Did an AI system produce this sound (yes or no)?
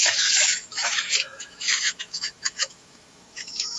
yes